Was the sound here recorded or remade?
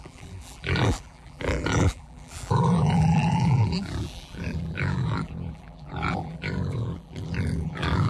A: remade